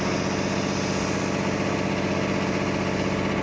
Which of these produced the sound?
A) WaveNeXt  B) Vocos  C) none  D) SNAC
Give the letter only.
C